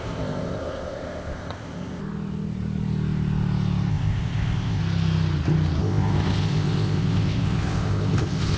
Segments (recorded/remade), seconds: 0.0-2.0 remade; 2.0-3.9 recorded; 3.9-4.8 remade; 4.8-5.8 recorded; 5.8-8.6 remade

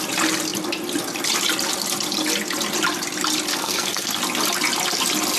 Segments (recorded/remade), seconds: 0.0-3.5 recorded; 3.5-4.2 remade; 4.2-5.4 recorded